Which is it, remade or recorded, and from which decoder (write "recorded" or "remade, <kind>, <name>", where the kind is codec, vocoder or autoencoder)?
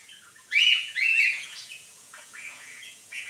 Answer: remade, vocoder, Vocos